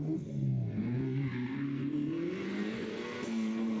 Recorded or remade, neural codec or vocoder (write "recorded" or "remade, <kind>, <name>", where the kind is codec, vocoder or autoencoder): remade, codec, SNAC